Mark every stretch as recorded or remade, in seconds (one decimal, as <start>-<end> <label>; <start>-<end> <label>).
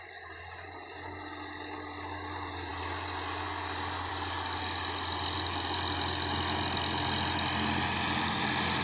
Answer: 0.0-8.8 recorded